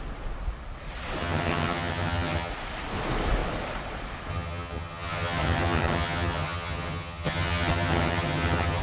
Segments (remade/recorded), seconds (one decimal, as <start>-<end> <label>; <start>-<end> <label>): 0.0-1.2 recorded; 1.2-2.5 remade; 2.5-4.3 recorded; 4.3-8.8 remade